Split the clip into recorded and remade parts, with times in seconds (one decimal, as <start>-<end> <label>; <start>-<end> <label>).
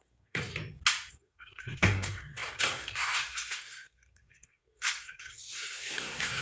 0.0-0.5 remade; 0.5-1.1 recorded; 1.1-6.4 remade